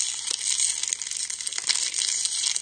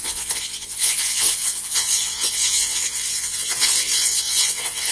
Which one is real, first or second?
first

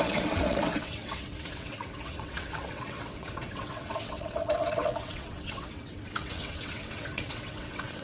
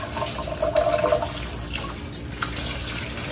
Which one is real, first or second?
second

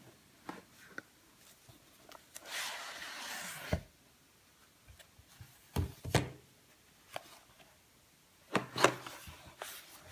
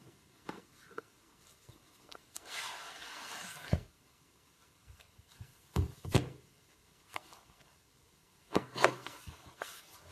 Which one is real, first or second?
first